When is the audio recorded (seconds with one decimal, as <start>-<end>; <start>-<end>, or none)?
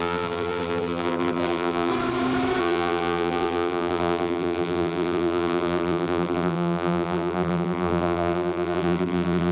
1.9-2.6